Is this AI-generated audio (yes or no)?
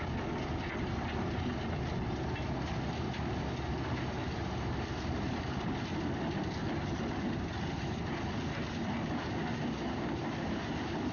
no